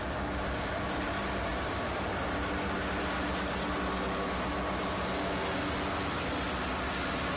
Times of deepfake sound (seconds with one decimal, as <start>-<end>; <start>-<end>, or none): none